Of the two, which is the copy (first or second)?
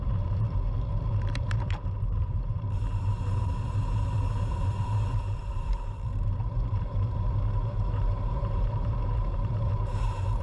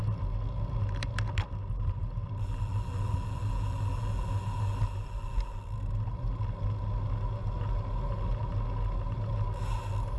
first